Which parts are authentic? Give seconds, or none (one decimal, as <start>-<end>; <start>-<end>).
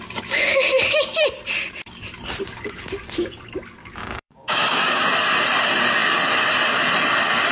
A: 0.0-3.8; 5.0-7.5